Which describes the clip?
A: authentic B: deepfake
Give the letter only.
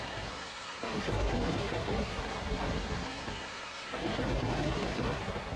B